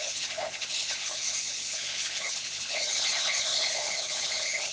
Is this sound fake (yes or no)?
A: yes